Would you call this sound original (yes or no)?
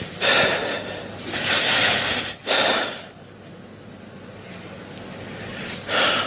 yes